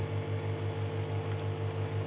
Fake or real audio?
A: real